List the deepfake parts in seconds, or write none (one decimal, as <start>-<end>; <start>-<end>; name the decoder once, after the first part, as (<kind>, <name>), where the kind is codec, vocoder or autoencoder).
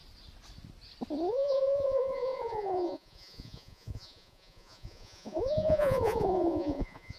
1.3-7.2 (vocoder, Vocos)